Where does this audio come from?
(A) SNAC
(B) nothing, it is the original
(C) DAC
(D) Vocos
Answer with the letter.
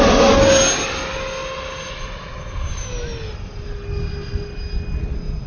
B